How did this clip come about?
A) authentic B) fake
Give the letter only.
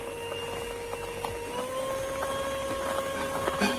A